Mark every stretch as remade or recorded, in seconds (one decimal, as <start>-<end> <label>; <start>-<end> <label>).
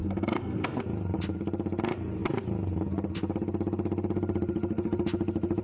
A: 0.0-0.8 remade; 0.8-5.6 recorded